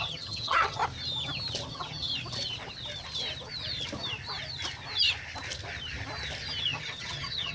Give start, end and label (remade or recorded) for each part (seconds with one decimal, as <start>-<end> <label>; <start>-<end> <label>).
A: 0.0-0.8 remade; 0.8-1.7 recorded; 1.7-2.1 remade; 2.1-6.6 recorded; 6.6-7.5 remade